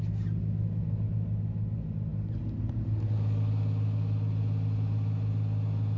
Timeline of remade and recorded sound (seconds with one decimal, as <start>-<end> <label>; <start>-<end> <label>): 0.0-6.0 recorded